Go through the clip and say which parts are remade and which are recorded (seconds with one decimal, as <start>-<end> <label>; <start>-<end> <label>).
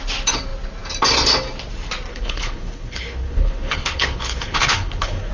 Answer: 0.0-2.1 recorded; 2.1-5.3 remade